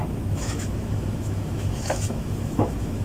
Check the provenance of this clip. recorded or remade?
remade